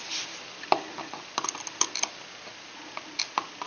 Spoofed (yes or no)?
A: no